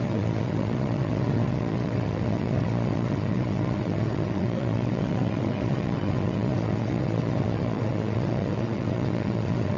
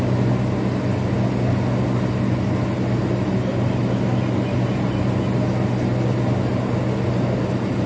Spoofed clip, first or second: first